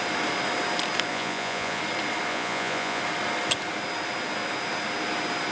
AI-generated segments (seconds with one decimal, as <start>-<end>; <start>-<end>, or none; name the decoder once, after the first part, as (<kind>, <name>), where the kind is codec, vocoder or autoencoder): 1.1-1.8 (vocoder, Vocos); 2.3-3.0